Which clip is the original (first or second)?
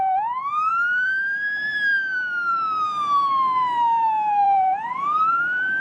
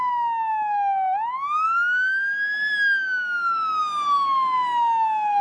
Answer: second